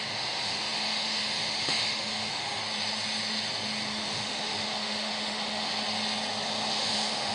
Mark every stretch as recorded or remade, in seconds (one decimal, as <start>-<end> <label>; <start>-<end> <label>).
0.0-2.6 remade; 2.6-3.9 recorded; 3.9-5.7 remade; 5.7-6.7 recorded; 6.7-7.3 remade